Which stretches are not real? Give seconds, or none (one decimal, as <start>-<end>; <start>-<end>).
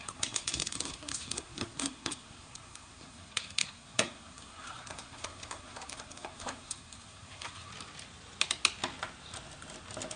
0.0-7.7